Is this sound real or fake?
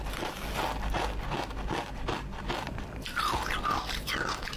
real